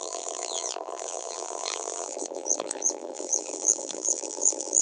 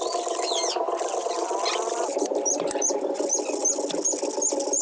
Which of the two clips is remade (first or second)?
first